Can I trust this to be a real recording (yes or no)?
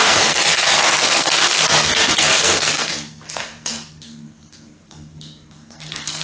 no